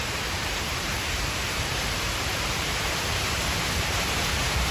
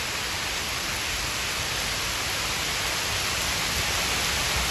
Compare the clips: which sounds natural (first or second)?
second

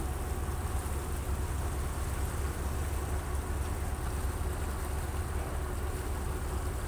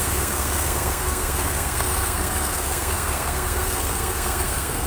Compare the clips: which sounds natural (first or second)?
first